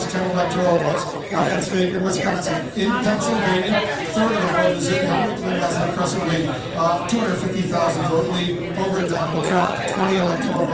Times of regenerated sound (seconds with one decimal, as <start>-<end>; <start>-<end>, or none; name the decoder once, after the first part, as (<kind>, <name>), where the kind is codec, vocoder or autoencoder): 0.7-2.4 (vocoder, HiFi-GAN); 9.0-10.7